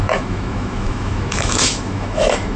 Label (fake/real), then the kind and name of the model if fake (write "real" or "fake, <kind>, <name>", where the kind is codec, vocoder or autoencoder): fake, autoencoder, DAC-VAE